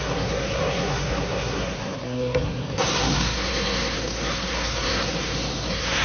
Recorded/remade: remade